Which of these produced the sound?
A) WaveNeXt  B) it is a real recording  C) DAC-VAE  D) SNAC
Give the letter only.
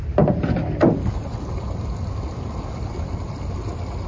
B